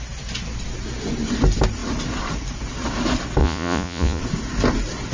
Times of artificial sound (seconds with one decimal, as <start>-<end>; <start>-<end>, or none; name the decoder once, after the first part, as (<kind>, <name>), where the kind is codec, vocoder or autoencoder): 3.4-4.2 (vocoder, Vocos)